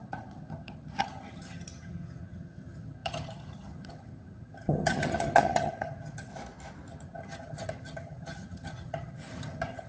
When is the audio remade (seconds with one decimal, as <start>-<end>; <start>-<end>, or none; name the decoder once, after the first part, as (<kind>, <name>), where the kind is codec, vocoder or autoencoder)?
0.0-6.3 (vocoder, HiFi-GAN); 6.9-9.9